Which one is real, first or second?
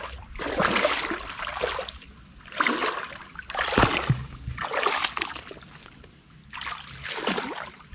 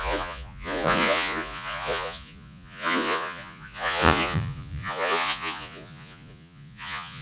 first